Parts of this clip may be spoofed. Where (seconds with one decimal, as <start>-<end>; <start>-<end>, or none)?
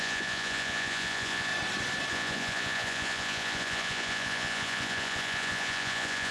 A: 0.0-1.5; 2.1-6.3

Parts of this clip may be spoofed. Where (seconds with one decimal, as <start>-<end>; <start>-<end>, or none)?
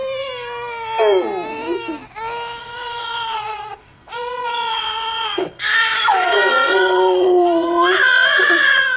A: 2.6-9.0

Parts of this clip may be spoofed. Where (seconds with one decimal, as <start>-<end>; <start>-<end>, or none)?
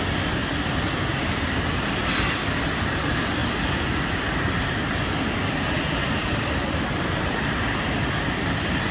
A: none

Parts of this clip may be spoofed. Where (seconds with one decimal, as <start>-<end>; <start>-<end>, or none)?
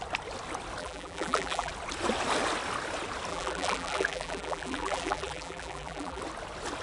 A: 0.8-1.7; 3.3-6.2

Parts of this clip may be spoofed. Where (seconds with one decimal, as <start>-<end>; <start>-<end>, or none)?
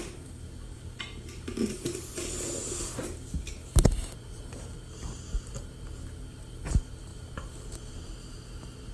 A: none